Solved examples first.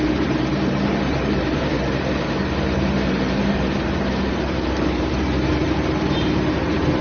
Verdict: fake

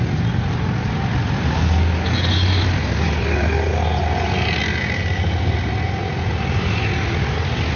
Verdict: real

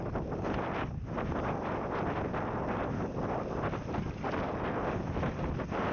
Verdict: real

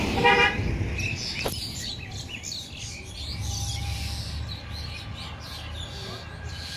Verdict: real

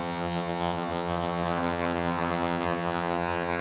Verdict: fake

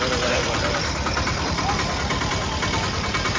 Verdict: real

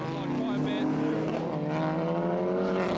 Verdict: real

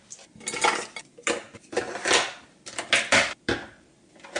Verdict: real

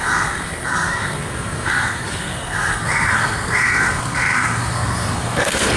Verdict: fake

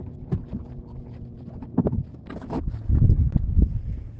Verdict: real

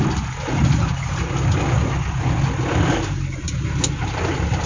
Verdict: real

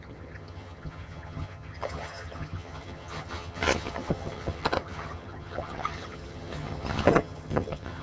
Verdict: fake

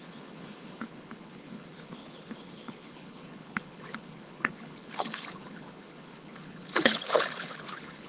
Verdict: fake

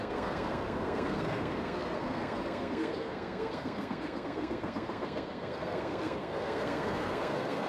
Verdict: fake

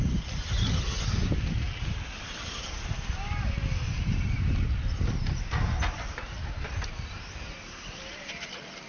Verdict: real